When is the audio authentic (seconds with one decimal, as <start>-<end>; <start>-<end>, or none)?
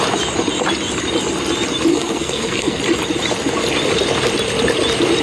0.0-1.9; 2.8-5.2